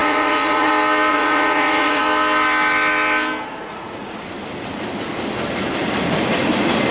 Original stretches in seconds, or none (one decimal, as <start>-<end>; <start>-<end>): 0.7-1.1; 2.0-3.6; 4.2-6.9